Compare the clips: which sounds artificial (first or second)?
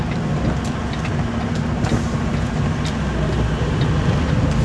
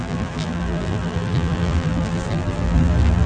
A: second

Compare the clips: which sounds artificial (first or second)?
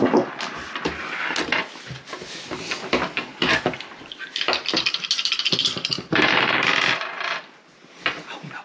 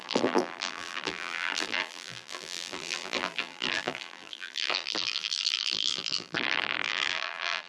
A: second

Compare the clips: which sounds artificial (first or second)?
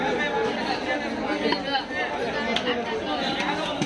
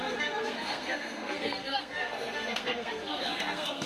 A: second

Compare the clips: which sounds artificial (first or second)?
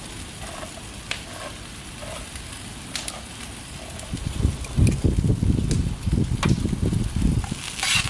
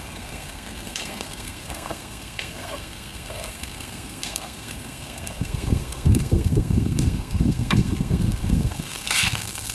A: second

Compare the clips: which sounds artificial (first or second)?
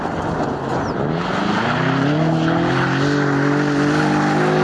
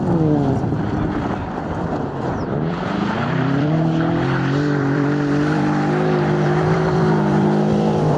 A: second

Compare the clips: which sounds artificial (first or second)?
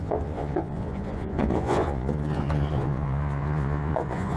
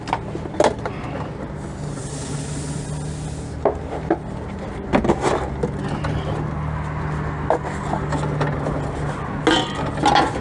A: first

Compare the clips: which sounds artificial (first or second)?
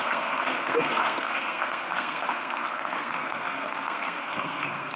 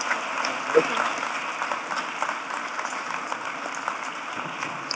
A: first